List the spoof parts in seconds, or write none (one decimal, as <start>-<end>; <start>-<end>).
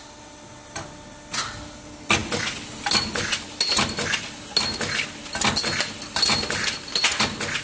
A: none